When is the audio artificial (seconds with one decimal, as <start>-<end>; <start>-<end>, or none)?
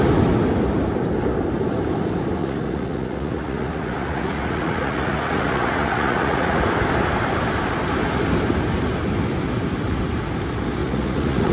2.4-6.6; 10.8-11.5